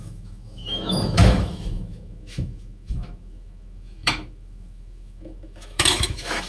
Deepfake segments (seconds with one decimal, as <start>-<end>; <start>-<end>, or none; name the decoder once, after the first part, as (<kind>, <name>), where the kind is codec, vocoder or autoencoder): 0.0-6.5 (autoencoder, DAC-VAE)